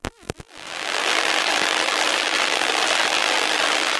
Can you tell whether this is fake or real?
fake